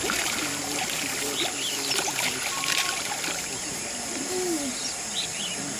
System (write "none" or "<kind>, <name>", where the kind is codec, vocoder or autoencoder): none